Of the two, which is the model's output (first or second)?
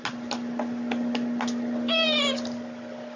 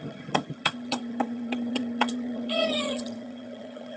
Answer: second